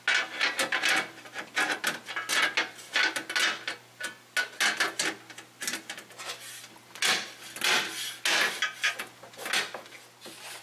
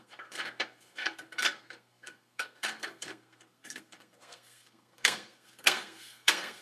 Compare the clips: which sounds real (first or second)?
first